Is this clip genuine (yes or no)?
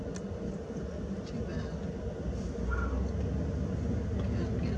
yes